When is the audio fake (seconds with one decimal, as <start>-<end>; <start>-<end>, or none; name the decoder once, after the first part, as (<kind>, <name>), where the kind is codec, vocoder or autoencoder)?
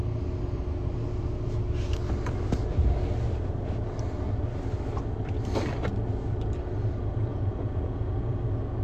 7.3-8.4 (vocoder, Vocos)